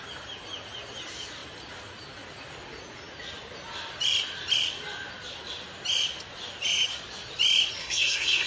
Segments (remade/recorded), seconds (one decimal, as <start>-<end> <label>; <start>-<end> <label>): 0.0-7.8 recorded; 7.8-8.5 remade